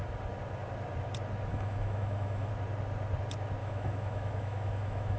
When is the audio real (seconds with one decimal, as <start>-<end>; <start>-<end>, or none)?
0.0-1.5; 2.5-3.6

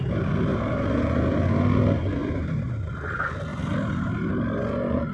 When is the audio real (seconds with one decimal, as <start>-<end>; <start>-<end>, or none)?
0.0-0.5; 1.4-2.2; 2.7-3.5; 4.3-5.1

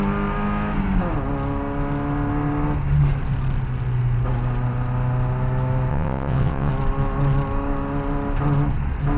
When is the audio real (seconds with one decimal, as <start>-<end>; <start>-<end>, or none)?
0.0-5.9; 6.7-9.2

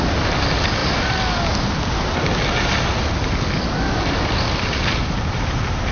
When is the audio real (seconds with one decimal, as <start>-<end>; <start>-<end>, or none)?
0.0-5.9

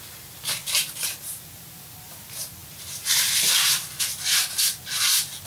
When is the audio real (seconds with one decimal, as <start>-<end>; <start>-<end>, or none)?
0.0-0.6; 1.5-2.6; 4.9-5.5

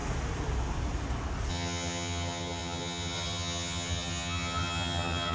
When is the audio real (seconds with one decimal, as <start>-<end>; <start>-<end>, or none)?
0.0-1.5

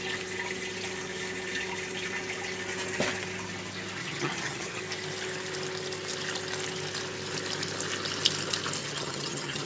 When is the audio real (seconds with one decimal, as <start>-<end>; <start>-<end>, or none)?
0.0-4.0; 4.8-8.8

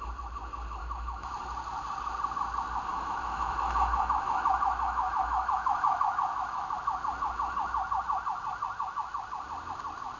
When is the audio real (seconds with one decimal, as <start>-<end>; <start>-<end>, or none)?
0.0-0.8; 1.3-2.9; 6.7-10.2